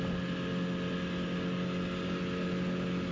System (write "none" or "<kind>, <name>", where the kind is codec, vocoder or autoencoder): none